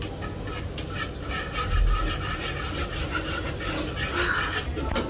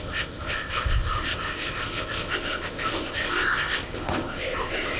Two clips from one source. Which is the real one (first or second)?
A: first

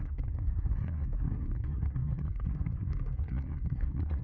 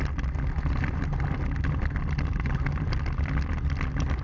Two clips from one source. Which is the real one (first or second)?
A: second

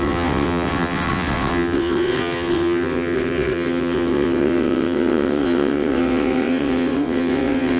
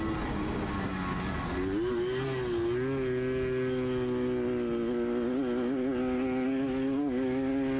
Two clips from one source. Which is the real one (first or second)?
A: second